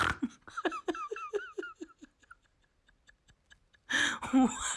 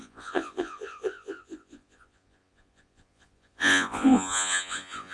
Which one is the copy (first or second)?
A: second